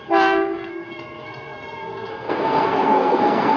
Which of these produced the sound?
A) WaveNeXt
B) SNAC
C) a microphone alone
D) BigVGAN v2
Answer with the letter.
B